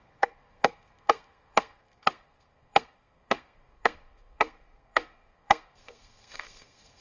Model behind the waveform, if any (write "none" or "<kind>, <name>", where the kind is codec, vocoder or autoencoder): codec, SNAC